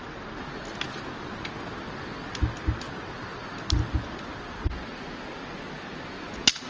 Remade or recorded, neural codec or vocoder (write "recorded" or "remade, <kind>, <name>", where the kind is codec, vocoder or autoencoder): recorded